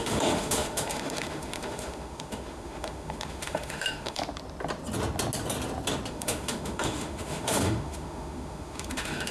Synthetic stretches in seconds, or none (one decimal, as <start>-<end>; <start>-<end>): 0.0-4.2; 6.1-9.3